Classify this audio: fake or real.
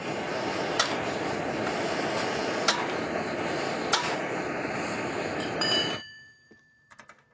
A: fake